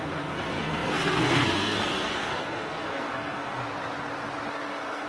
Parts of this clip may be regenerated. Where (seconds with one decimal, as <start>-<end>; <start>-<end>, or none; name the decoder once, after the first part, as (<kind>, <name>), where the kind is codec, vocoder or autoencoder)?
0.0-3.6 (codec, SNAC); 4.5-5.1